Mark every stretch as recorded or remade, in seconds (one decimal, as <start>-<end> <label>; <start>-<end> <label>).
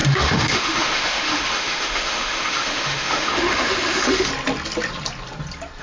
0.0-4.3 remade; 4.3-5.8 recorded